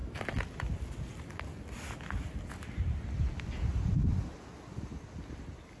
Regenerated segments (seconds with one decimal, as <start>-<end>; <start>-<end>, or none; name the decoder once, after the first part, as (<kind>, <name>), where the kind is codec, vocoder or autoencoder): none